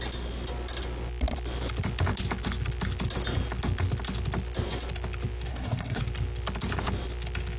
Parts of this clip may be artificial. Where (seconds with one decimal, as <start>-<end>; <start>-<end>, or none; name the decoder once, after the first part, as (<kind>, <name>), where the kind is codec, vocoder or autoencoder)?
5.5-6.0 (codec, SNAC)